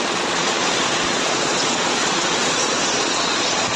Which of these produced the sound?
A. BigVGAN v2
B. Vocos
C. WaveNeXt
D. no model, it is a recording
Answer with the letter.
B